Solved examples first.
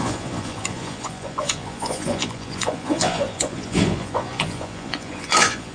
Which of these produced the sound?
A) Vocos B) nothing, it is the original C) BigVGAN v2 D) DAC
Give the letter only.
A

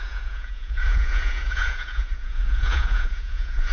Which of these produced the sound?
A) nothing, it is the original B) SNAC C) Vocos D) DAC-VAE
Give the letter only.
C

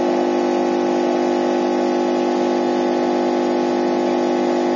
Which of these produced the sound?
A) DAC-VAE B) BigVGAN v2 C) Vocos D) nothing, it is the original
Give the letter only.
D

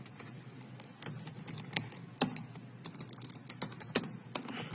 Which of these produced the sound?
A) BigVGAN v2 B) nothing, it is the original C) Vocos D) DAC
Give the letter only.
B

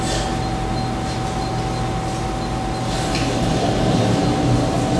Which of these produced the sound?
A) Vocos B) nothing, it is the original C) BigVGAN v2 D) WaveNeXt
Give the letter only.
B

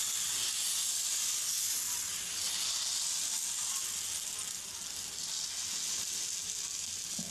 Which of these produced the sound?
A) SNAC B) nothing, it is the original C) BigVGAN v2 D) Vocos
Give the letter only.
B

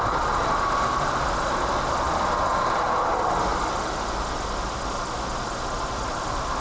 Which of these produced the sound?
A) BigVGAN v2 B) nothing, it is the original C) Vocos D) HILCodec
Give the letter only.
B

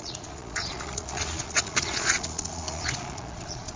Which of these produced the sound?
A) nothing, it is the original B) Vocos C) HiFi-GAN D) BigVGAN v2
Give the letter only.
B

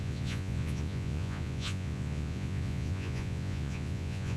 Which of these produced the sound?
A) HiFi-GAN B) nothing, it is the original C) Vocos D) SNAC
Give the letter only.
C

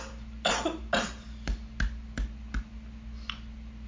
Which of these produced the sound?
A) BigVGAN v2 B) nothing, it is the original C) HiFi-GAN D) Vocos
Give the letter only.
B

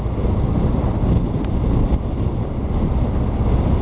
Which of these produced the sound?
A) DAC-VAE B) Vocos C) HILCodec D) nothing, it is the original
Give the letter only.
D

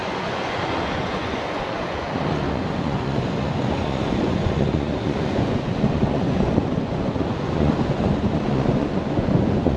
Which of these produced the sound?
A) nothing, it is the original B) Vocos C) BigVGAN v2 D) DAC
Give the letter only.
B